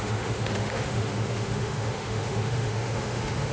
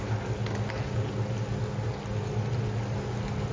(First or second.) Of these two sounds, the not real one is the first